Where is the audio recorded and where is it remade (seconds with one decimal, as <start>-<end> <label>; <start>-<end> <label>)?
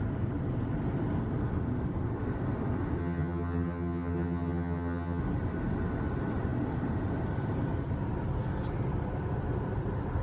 0.0-3.0 recorded; 3.0-5.2 remade; 5.2-10.2 recorded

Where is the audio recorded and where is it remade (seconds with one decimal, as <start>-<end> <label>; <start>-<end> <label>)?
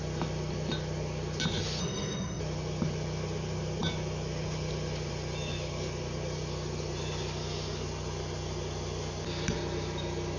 0.0-1.8 recorded; 1.8-2.4 remade; 2.4-10.4 recorded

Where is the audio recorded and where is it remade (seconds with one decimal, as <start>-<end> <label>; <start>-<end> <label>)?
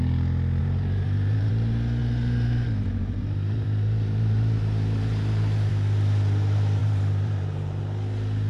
0.0-0.6 recorded; 0.6-1.5 remade; 1.5-2.0 recorded; 2.0-5.7 remade; 5.7-6.8 recorded; 6.8-7.8 remade; 7.8-8.5 recorded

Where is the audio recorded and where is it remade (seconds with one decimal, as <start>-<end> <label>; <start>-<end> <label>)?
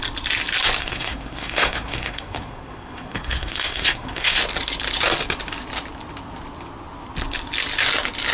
0.0-0.8 recorded; 0.8-4.4 remade; 4.4-8.3 recorded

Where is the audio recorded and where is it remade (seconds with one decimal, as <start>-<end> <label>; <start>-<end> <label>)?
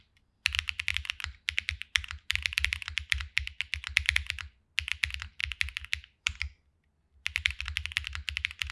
0.0-8.7 recorded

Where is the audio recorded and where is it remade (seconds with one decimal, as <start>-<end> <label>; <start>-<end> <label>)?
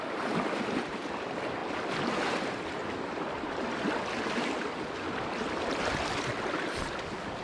0.0-7.4 recorded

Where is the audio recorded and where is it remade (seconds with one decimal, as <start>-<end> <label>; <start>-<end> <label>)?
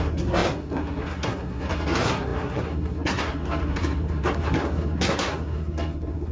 0.0-6.3 remade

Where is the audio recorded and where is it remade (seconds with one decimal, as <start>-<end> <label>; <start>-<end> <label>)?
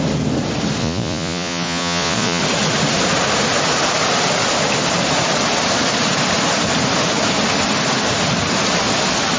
0.0-0.8 recorded; 0.8-2.4 remade; 2.4-9.4 recorded